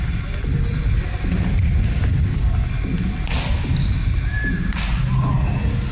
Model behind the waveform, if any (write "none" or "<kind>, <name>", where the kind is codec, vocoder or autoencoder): none